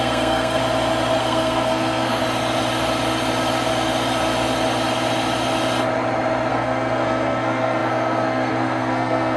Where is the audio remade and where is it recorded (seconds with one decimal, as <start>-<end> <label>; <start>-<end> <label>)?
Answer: 0.0-0.6 remade; 0.6-1.2 recorded; 1.2-2.2 remade; 2.2-6.5 recorded; 6.5-9.4 remade